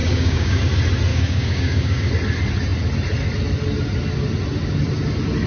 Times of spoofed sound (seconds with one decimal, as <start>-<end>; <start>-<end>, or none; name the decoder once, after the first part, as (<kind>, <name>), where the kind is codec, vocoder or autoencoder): 0.0-0.6 (codec, DAC); 1.1-2.1